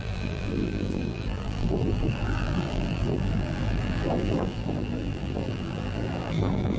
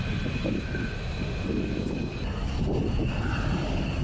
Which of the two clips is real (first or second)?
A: second